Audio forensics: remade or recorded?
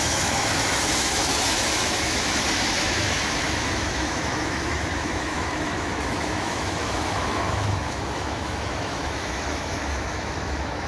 remade